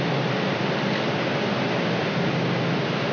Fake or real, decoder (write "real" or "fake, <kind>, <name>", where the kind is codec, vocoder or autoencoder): real